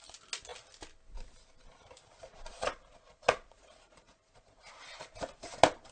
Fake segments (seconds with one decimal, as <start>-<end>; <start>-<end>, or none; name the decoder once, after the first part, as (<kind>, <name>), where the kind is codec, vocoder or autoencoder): 2.3-4.7 (vocoder, Vocos)